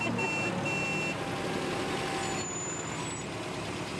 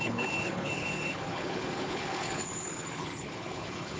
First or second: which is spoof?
second